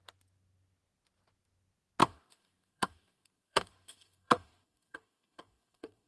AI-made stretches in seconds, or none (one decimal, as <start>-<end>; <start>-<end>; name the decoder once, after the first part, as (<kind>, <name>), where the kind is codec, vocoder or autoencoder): 2.0-6.1 (codec, DAC)